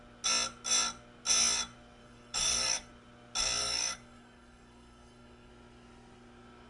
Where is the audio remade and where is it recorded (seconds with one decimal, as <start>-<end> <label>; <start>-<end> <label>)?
0.0-2.0 recorded; 2.0-2.9 remade; 2.9-3.6 recorded; 3.6-5.5 remade; 5.5-6.7 recorded